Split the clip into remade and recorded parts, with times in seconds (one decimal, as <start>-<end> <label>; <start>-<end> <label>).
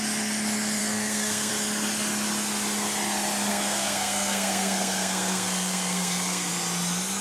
0.0-0.8 recorded; 0.8-1.5 remade; 1.5-3.5 recorded; 3.5-6.5 remade; 6.5-7.2 recorded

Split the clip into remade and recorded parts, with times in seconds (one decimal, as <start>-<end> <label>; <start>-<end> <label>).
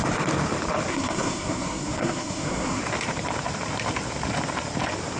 0.0-0.9 recorded; 0.9-2.8 remade; 2.8-5.2 recorded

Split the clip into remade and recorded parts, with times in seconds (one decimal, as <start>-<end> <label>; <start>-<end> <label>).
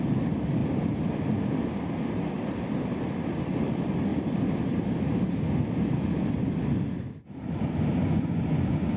0.0-8.0 recorded; 8.0-9.0 remade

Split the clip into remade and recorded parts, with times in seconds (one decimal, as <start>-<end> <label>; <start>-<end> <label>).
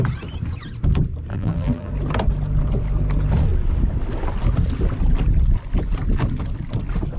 0.0-1.3 recorded; 1.3-1.9 remade; 1.9-7.2 recorded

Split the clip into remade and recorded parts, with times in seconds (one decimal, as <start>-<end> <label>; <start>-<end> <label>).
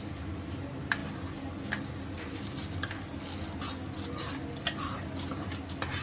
0.0-6.0 recorded